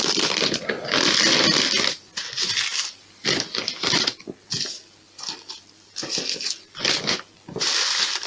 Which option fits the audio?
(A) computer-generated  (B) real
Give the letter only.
B